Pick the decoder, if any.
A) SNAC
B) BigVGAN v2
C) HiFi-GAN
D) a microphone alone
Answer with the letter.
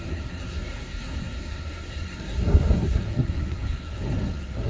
A